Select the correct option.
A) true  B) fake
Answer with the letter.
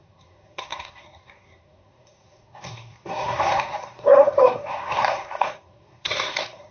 B